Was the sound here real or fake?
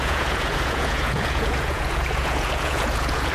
fake